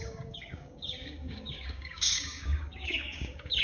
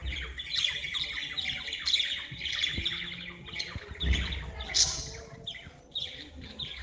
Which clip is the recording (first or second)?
second